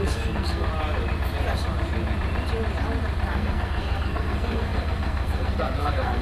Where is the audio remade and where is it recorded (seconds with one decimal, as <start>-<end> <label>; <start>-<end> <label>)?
0.0-0.7 remade; 0.7-3.3 recorded; 3.3-6.2 remade